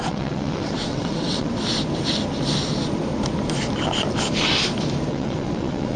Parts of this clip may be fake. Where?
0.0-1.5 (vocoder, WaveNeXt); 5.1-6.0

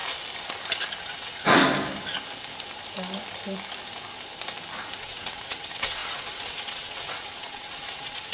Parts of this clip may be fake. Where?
1.0-1.6 (vocoder, WaveNeXt); 5.0-8.3

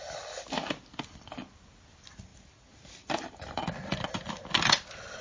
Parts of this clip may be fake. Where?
none

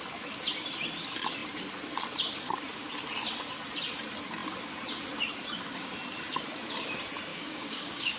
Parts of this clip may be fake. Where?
7.3-8.2 (codec, DAC)

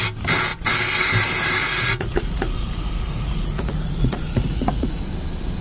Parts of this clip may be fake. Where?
1.6-5.0 (vocoder, Vocos)

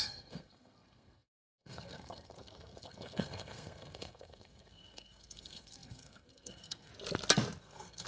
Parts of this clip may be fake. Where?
0.0-6.9 (codec, SNAC); 7.6-8.1

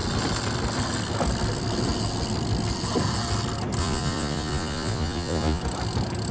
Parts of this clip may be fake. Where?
3.8-5.6 (vocoder, Vocos)

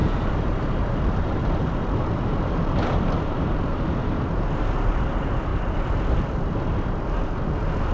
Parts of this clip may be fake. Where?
0.0-4.7 (vocoder, BigVGAN v2)